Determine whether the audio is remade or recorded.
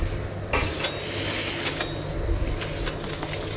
recorded